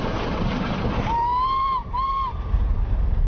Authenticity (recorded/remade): recorded